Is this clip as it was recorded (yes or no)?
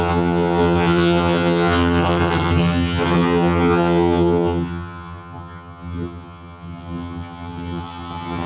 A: no